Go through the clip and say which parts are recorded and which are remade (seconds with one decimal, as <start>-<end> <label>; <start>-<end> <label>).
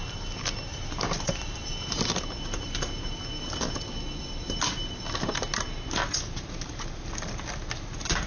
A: 0.0-0.7 recorded; 0.7-2.0 remade; 2.0-8.3 recorded